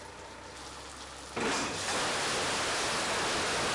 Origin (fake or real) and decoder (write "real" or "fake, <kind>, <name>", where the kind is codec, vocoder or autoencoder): real